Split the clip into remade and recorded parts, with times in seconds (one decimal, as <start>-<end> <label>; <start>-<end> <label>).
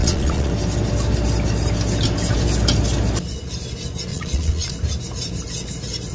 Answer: 0.0-0.5 remade; 0.5-4.1 recorded; 4.1-4.7 remade; 4.7-6.1 recorded